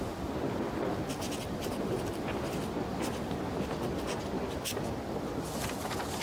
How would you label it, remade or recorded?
recorded